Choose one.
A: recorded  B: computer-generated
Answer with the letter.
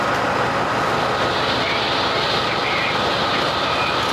A